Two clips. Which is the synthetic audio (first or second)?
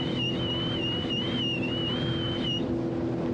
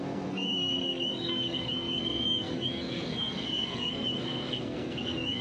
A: second